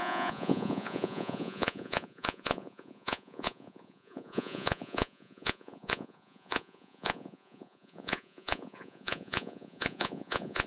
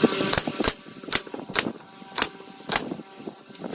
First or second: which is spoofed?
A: first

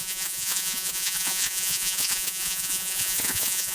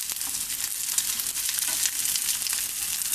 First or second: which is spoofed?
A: first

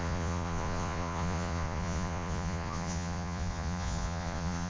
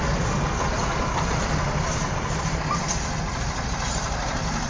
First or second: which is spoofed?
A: first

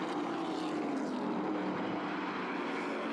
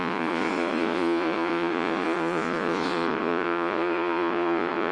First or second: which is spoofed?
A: second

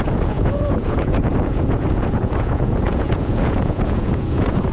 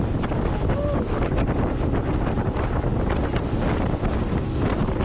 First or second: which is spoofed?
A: first